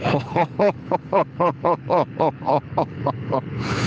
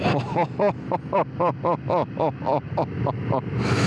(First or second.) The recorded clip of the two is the second